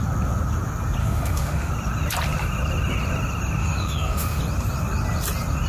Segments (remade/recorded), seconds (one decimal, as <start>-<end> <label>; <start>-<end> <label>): 0.0-1.0 recorded; 1.0-1.7 remade; 1.7-3.6 recorded; 3.6-4.4 remade; 4.4-5.7 recorded